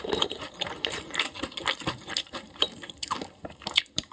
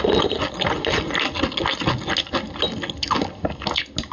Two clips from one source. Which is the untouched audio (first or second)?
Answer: second